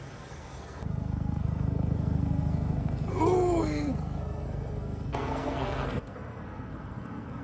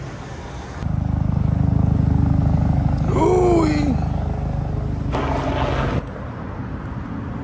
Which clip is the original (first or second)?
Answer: second